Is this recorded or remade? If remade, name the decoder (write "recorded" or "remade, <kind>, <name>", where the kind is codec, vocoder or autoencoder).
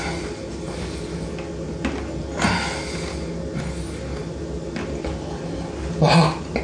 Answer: recorded